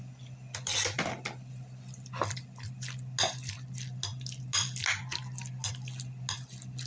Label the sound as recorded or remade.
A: recorded